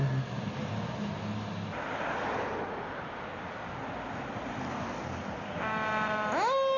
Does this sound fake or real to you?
real